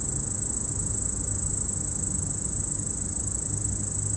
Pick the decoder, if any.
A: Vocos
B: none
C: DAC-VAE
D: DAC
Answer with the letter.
B